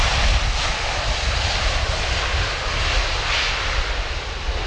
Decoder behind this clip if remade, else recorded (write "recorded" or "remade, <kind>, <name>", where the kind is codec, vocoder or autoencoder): recorded